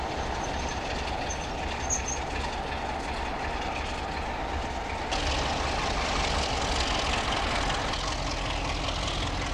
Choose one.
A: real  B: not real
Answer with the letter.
A